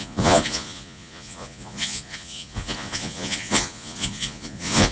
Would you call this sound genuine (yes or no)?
no